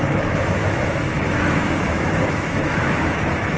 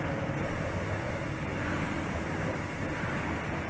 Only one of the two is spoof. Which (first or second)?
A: first